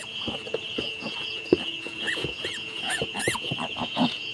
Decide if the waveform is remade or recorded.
remade